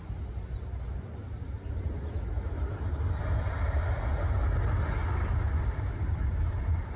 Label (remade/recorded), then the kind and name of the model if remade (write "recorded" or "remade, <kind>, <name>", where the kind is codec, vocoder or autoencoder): recorded